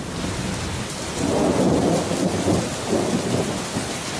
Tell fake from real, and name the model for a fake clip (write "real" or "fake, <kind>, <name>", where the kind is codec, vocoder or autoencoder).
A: real